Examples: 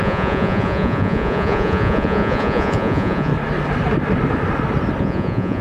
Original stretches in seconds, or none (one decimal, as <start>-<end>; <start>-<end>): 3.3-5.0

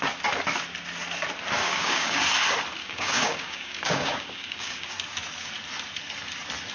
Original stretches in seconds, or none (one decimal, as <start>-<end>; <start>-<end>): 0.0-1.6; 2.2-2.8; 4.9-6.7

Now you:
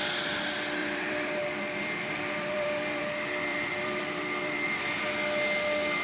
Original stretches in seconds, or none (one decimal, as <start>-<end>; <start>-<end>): 0.0-0.8; 3.0-3.5; 5.1-6.0

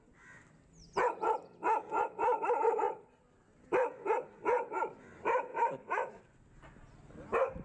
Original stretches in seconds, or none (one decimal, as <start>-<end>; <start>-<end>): 0.0-5.5; 6.2-7.6

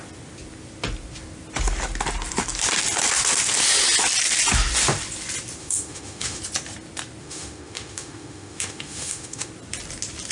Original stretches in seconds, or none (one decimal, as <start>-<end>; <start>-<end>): 0.0-5.6; 6.4-7.2; 9.5-10.3